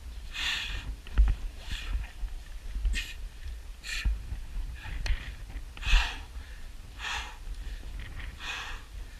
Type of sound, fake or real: real